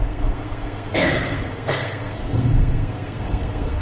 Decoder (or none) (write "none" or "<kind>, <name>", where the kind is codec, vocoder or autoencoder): codec, SNAC